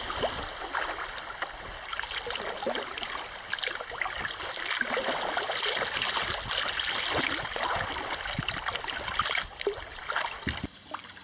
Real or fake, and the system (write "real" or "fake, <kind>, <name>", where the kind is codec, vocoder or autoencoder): real